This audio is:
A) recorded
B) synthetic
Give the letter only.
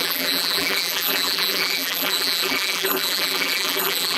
B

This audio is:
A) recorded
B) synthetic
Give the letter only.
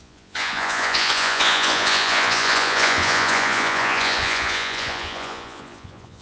B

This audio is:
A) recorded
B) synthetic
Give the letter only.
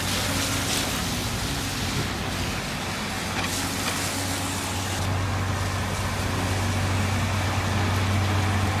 A